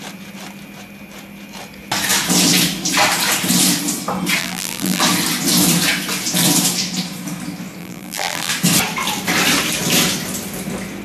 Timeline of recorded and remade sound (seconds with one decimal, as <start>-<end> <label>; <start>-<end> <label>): 0.0-4.4 recorded; 4.4-5.0 remade; 5.0-7.8 recorded; 7.8-8.5 remade; 8.5-11.0 recorded